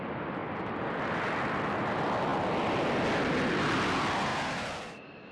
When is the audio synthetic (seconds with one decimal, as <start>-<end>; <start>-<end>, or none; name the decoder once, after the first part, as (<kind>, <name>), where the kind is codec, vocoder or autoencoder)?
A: none